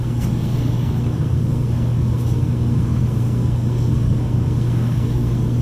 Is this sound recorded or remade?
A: remade